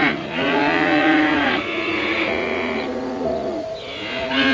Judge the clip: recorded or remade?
remade